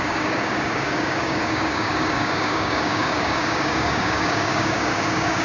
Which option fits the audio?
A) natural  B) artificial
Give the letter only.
B